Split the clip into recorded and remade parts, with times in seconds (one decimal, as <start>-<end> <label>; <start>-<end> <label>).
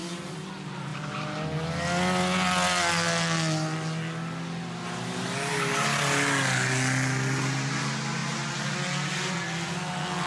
0.0-10.3 recorded